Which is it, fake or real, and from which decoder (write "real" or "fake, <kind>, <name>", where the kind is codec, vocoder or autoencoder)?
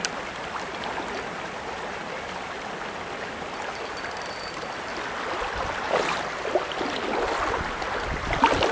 real